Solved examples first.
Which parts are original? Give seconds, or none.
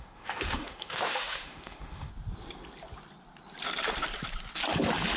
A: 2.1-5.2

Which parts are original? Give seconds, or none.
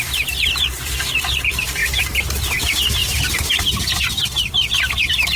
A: 1.8-2.4; 3.0-3.7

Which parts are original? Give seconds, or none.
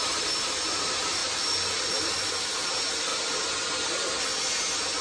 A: 3.1-3.9; 4.3-5.0